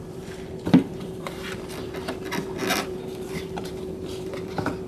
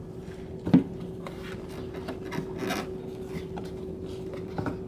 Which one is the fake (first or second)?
first